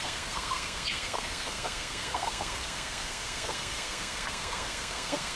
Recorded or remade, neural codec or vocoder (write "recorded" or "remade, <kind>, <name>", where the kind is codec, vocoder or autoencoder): remade, codec, SNAC